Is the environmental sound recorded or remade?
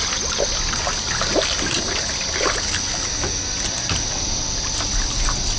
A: recorded